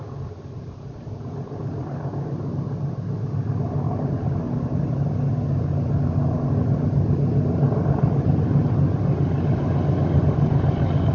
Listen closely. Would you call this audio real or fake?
real